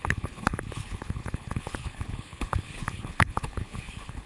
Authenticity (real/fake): fake